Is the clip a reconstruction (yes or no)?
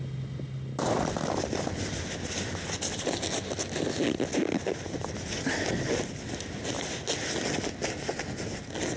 no